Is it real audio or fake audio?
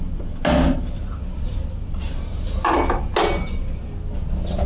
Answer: real